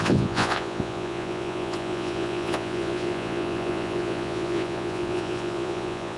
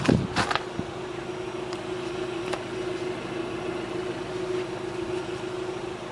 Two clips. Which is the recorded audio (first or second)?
second